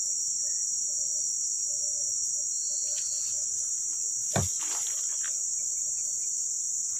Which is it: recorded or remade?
recorded